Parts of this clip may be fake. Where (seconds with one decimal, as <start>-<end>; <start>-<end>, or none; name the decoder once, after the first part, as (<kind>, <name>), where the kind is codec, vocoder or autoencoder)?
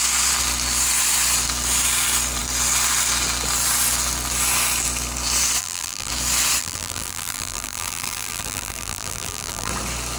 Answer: 5.6-6.1 (vocoder, BigVGAN v2); 6.6-9.7